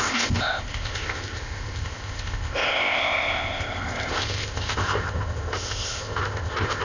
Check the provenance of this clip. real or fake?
fake